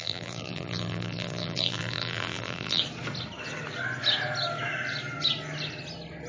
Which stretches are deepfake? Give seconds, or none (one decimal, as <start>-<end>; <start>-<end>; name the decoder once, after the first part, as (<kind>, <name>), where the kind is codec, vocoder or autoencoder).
0.0-2.8 (vocoder, BigVGAN v2)